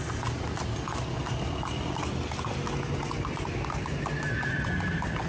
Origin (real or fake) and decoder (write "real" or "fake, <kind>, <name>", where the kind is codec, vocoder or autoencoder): real